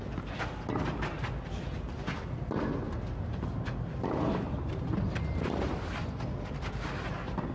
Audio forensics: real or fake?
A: real